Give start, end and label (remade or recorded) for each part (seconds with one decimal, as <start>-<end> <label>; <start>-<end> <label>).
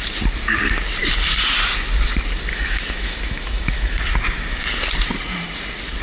0.0-2.5 recorded; 2.5-4.0 remade; 4.0-6.0 recorded